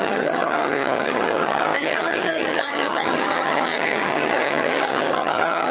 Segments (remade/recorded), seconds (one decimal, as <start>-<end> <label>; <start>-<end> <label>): 0.0-5.7 remade